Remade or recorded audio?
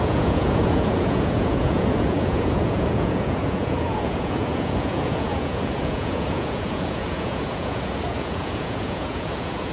remade